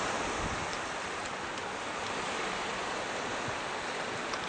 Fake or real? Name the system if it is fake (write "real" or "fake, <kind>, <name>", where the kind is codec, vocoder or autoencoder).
real